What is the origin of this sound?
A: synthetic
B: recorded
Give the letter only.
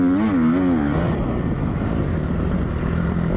B